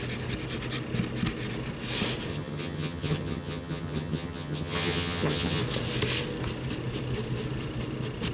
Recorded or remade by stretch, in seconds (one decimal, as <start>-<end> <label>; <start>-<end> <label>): 0.0-2.3 recorded; 2.3-5.6 remade; 5.6-8.3 recorded